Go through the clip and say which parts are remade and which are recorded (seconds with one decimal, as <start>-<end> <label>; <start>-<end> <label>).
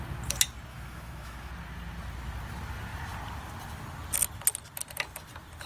0.0-0.7 recorded; 0.7-1.5 remade; 1.5-5.7 recorded